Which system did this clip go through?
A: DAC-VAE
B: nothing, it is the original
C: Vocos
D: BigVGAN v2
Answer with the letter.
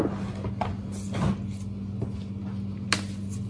B